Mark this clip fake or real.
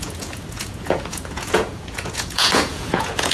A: fake